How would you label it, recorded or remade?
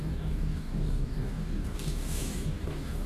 remade